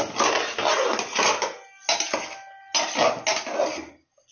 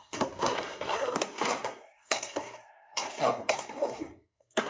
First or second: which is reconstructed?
second